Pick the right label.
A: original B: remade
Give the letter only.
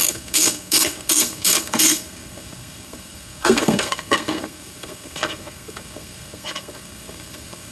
B